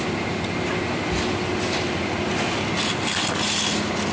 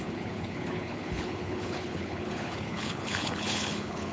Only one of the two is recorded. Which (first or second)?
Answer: first